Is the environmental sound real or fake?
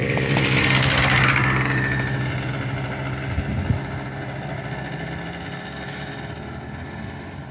real